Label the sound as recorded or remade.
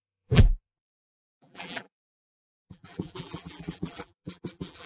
remade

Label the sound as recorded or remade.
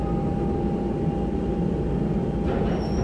recorded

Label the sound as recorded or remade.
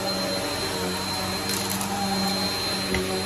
recorded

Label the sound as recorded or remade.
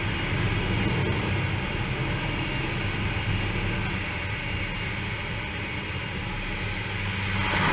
recorded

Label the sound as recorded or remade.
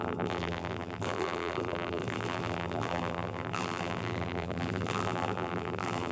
remade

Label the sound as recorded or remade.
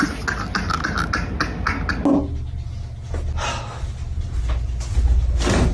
recorded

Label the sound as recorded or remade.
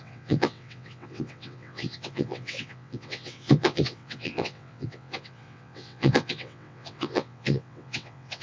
remade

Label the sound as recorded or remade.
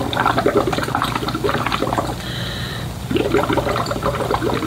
recorded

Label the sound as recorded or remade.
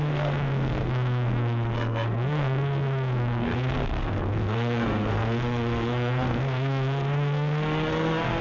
remade